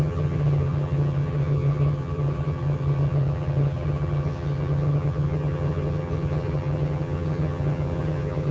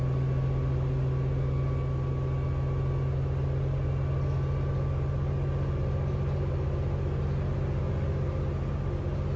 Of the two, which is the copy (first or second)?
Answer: first